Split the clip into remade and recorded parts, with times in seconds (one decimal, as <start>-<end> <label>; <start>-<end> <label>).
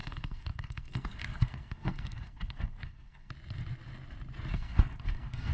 0.0-3.3 remade; 3.3-4.5 recorded; 4.5-5.5 remade